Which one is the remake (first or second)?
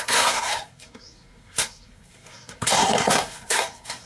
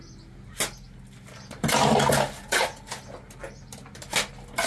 first